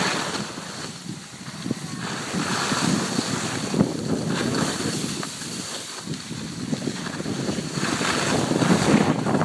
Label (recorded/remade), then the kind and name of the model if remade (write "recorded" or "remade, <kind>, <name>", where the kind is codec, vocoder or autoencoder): recorded